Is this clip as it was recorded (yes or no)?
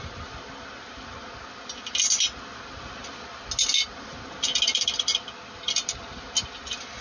yes